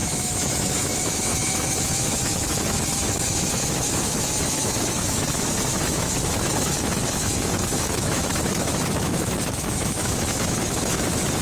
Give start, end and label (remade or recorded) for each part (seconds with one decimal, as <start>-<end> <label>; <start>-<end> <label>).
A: 0.0-11.4 remade